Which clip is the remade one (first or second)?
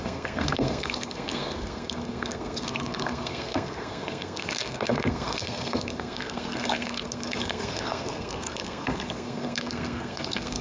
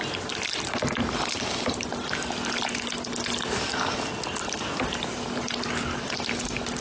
first